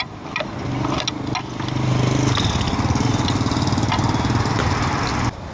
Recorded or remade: recorded